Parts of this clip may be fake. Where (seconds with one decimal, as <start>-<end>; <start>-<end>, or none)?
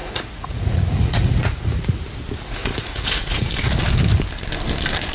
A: 0.0-2.0; 2.6-3.5